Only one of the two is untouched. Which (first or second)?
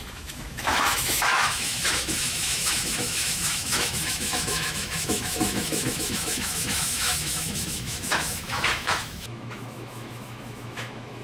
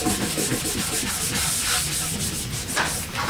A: second